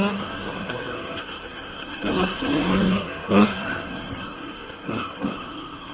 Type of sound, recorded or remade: remade